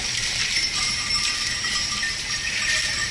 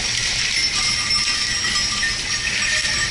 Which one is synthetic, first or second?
first